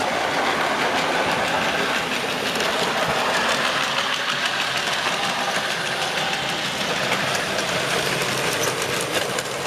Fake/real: real